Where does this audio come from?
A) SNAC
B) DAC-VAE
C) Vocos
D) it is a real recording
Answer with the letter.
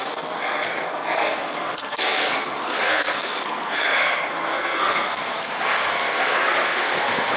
A